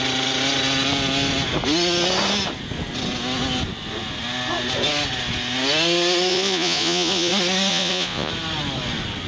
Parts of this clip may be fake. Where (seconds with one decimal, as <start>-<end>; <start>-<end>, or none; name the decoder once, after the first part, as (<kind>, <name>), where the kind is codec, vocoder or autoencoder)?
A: 6.3-7.3 (vocoder, Vocos); 7.7-8.3